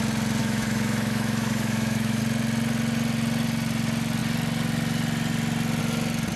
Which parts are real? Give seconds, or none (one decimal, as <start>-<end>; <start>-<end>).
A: 0.0-0.4; 2.2-6.4